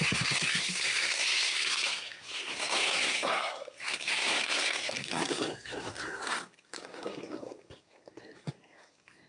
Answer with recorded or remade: remade